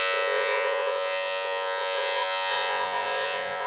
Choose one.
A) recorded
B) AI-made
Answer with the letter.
B